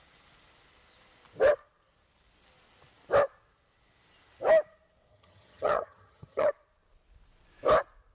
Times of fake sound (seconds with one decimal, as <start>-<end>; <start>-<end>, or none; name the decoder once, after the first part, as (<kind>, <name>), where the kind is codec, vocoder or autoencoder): 5.1-6.5 (vocoder, HiFi-GAN)